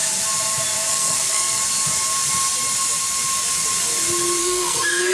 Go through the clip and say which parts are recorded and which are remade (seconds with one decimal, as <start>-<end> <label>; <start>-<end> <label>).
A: 0.0-0.9 recorded; 0.9-1.6 remade; 1.6-4.4 recorded; 4.4-5.1 remade